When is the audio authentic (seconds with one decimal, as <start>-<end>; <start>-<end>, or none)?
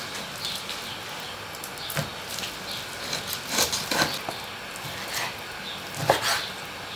0.0-7.0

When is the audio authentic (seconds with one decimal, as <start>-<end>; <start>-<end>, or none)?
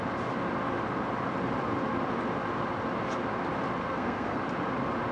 0.0-3.8; 4.4-5.1